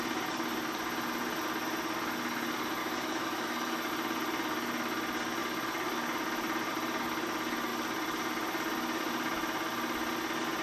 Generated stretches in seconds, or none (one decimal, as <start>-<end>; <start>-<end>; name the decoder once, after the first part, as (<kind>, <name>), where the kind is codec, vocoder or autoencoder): 2.8-3.9 (autoencoder, DAC-VAE)